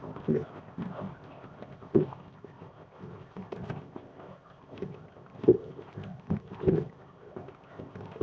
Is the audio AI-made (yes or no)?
yes